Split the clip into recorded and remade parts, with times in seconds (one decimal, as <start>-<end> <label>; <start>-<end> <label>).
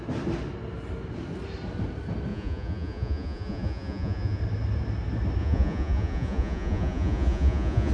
0.0-2.3 recorded; 2.3-4.4 remade; 4.4-5.4 recorded; 5.4-7.9 remade